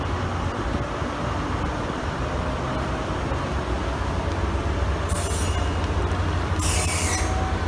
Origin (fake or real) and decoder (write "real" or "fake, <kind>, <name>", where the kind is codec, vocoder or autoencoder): real